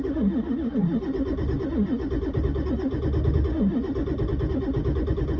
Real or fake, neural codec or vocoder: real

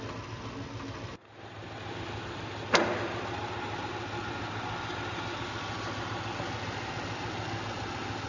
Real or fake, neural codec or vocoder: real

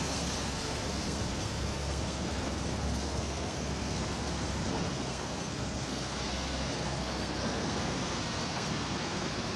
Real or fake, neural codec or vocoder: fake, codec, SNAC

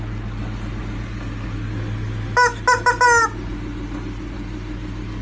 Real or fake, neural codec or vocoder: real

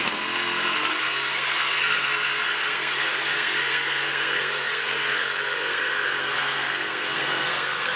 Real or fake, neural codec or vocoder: fake, codec, SNAC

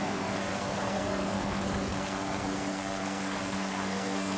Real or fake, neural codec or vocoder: fake, codec, SNAC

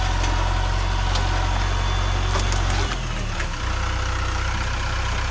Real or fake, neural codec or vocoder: real